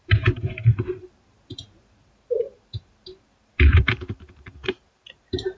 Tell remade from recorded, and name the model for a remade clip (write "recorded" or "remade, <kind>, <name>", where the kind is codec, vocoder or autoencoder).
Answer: remade, vocoder, BigVGAN v2